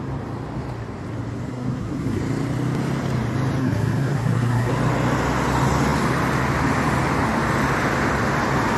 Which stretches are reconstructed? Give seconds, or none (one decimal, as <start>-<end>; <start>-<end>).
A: 1.5-2.2; 3.6-4.7